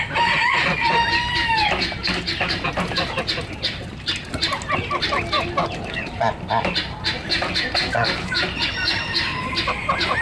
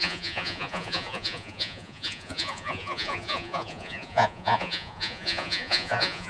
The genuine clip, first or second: first